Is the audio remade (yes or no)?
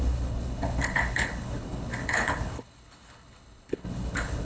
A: yes